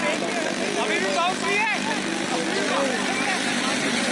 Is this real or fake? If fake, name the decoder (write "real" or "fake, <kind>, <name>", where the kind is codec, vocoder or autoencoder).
real